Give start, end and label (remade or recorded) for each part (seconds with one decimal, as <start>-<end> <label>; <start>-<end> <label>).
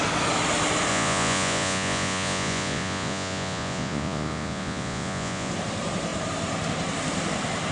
0.0-0.9 recorded; 0.9-5.5 remade; 5.5-7.7 recorded